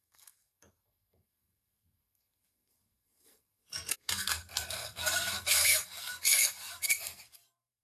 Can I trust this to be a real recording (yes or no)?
no